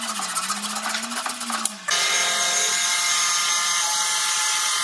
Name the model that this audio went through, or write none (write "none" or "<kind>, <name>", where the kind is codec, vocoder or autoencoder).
none